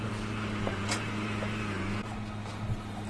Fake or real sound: real